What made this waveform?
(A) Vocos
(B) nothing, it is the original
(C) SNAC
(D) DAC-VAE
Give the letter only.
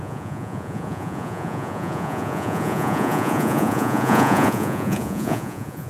A